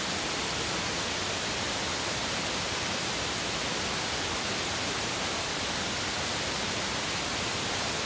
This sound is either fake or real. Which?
real